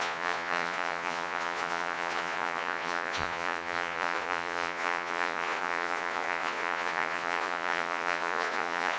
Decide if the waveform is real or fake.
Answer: fake